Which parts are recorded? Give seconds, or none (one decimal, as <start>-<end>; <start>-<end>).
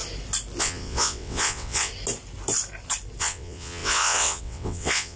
0.0-0.6; 1.9-3.2